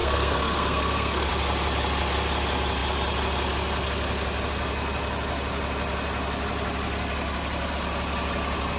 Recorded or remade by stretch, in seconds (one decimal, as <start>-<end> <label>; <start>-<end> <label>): 0.0-1.3 remade; 1.3-8.8 recorded